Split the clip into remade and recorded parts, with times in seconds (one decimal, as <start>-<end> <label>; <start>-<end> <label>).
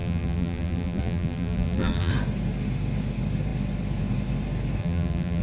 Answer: 0.0-2.1 remade; 2.1-4.8 recorded; 4.8-5.4 remade